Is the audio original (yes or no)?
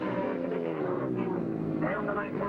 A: no